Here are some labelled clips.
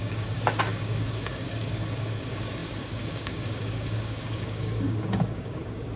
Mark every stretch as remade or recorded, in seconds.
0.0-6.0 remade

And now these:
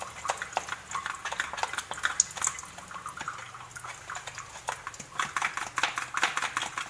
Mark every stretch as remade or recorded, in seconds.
0.0-6.9 recorded

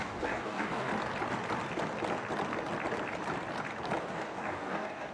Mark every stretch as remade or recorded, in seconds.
0.0-0.9 remade; 0.9-4.0 recorded; 4.0-5.1 remade

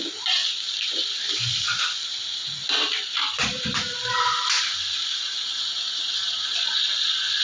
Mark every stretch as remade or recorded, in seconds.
0.0-7.4 recorded

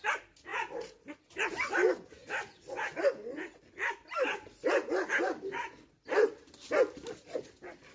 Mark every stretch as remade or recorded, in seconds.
0.0-7.9 recorded